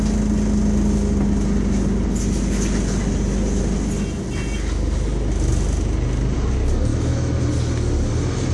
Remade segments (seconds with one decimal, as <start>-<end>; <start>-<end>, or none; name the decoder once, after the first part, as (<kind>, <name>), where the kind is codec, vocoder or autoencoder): 6.9-7.4 (autoencoder, DAC-VAE)